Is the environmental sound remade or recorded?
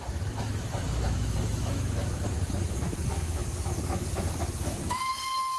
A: remade